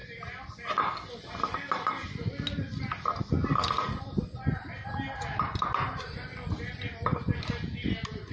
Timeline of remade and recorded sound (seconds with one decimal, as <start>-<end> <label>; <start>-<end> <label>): 0.0-8.3 recorded